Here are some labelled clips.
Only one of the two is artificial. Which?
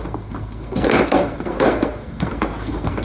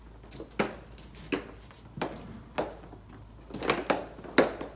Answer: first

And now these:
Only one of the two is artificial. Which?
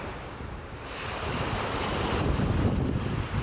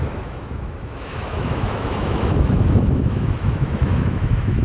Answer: second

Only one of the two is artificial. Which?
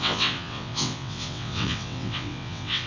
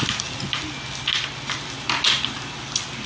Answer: first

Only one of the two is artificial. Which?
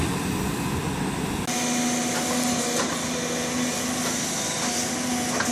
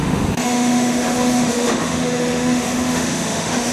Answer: second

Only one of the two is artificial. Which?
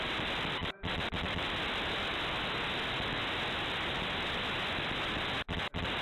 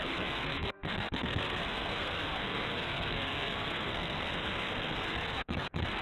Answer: second